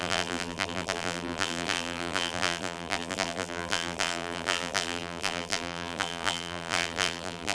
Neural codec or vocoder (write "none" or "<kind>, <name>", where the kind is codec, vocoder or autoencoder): vocoder, BigVGAN v2